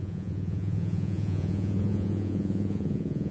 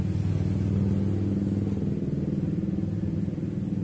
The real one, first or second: second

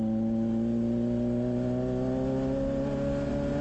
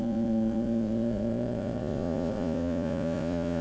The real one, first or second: first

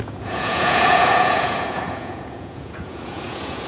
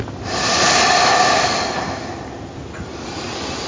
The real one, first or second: second